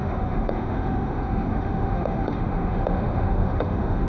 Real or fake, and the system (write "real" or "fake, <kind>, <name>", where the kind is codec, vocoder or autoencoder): fake, autoencoder, DAC-VAE